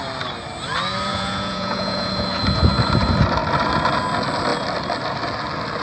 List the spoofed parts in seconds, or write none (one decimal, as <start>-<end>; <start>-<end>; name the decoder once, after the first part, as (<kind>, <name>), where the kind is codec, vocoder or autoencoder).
1.1-2.4 (vocoder, Vocos)